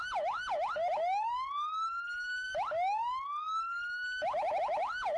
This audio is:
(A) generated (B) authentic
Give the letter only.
B